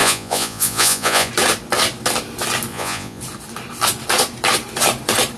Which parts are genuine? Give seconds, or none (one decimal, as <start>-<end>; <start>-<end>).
1.3-2.7; 3.2-5.4